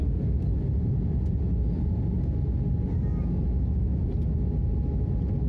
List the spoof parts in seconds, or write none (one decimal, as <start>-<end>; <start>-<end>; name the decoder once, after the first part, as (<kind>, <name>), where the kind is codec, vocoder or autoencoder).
none